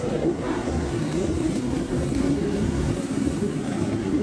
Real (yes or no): no